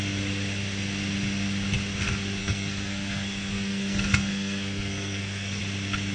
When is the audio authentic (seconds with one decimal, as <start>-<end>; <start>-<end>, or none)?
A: 0.0-2.4; 5.6-6.1